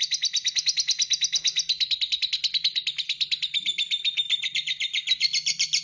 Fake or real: real